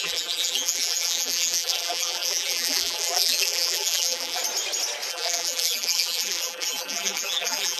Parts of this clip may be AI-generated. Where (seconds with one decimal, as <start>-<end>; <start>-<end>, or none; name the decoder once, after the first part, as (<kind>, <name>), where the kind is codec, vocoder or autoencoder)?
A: 0.0-4.4 (vocoder, BigVGAN v2); 5.1-7.8